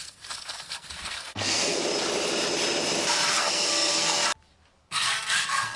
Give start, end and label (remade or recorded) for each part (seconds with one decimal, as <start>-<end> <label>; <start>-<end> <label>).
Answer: 0.0-1.8 remade; 1.8-3.3 recorded; 3.3-4.2 remade; 4.2-4.8 recorded; 4.8-5.8 remade